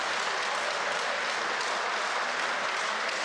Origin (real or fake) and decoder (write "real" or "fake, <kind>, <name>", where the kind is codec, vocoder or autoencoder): real